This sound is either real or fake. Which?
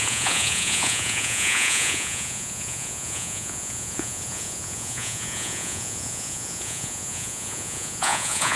fake